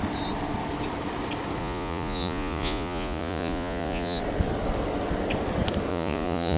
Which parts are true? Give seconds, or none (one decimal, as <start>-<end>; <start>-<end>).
0.0-1.6; 4.2-5.9